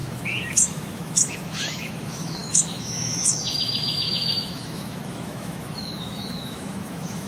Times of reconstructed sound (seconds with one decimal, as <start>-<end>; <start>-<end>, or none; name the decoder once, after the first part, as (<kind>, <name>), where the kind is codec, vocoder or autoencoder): 0.0-7.3 (autoencoder, DAC-VAE)